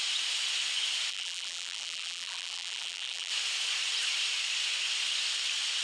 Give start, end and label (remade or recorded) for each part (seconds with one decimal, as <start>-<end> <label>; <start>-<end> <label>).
0.0-1.1 recorded; 1.1-3.3 remade; 3.3-5.8 recorded